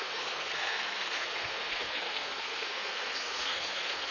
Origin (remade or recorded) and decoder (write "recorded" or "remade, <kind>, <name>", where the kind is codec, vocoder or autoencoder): remade, codec, SNAC